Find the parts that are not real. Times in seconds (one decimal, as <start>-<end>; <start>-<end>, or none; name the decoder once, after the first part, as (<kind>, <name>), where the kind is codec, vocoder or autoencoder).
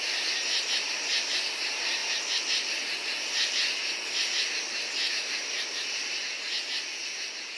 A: none